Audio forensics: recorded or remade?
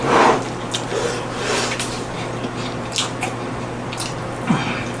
recorded